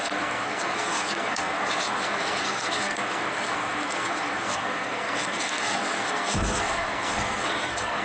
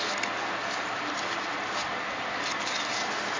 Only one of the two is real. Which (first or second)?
second